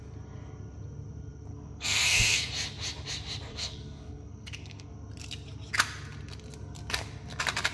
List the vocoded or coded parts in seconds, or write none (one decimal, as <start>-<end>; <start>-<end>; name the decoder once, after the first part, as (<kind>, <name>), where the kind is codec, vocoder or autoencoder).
1.5-2.5 (codec, SNAC); 3.5-4.9